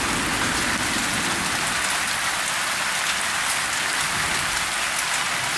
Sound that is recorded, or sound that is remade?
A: recorded